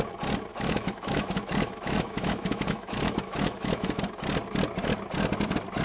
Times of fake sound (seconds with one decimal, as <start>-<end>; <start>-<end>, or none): 0.5-4.0